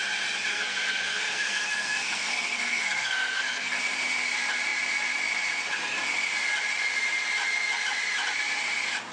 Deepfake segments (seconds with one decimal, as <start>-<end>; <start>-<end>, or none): 0.5-3.8